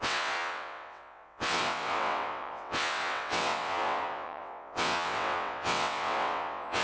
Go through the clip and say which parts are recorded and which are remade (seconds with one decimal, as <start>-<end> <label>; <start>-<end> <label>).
0.0-6.8 remade